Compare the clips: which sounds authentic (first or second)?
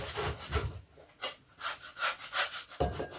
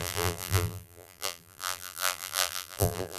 first